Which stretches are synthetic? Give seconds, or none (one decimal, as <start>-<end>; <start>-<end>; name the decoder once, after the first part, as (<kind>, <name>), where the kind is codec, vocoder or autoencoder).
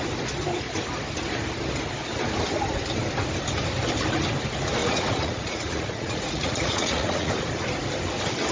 4.8-7.3 (vocoder, Vocos)